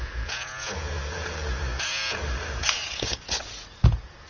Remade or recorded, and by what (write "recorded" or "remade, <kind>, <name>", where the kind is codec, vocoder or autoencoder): remade, vocoder, Vocos